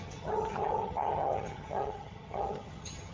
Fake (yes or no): yes